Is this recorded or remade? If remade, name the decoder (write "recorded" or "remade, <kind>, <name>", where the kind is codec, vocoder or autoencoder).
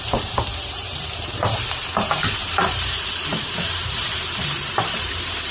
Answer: remade, vocoder, BigVGAN v2